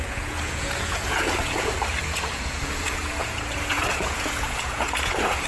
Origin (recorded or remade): remade